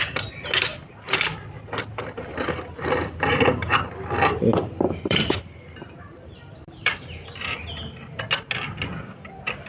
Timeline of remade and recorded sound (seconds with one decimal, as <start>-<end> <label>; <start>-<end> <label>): 0.0-5.0 recorded; 5.0-6.9 remade; 6.9-9.7 recorded